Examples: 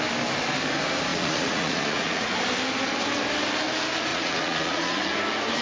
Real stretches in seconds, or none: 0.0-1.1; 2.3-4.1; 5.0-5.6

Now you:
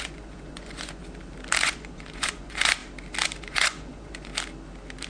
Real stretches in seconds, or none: 1.0-1.6; 2.8-3.4; 4.3-5.1

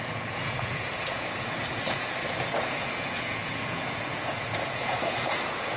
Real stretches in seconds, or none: none

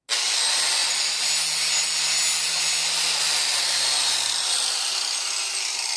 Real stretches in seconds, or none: 0.0-6.0

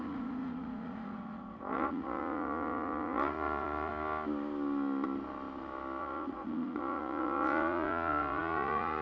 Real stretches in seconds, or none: 3.9-6.0

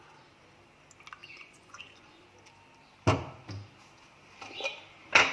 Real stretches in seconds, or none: 0.0-1.2; 2.2-5.3

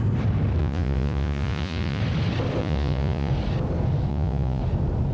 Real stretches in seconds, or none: 0.0-0.6; 2.0-2.6; 3.3-4.1; 4.6-5.1

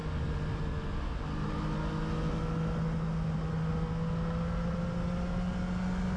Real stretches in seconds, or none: 0.0-6.2